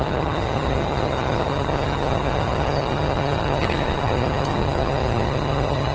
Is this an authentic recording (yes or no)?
no